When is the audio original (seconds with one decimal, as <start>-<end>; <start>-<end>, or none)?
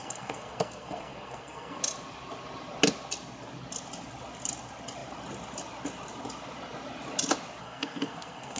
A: 1.8-7.6